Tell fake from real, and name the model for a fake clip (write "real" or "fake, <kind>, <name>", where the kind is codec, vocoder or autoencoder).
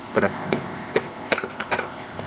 fake, codec, ZipCodec